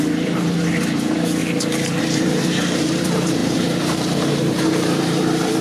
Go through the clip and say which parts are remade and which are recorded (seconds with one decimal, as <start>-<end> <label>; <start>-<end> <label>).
0.0-1.4 remade; 1.4-2.0 recorded; 2.0-5.6 remade